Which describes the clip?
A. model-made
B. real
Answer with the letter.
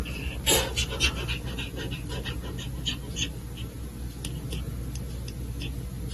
B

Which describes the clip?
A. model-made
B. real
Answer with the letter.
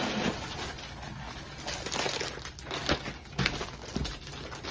B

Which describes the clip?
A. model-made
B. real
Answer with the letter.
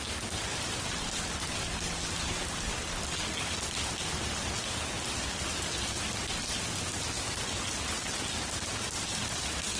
B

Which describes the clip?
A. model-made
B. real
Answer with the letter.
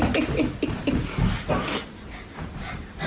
B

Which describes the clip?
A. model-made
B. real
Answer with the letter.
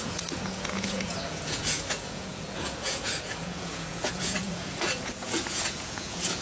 A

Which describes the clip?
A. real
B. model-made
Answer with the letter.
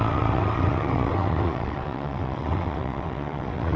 B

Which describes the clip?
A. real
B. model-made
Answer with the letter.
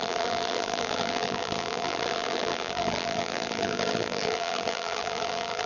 B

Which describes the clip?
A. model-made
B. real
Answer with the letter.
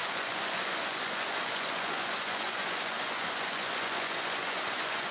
A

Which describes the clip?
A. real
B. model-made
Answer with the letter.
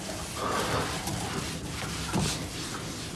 A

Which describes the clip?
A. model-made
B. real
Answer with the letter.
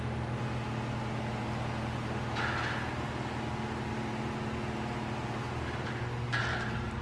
B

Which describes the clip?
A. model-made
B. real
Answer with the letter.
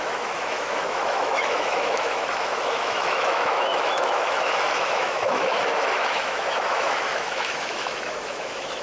A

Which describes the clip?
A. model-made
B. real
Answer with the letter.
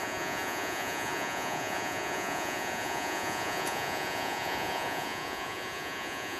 A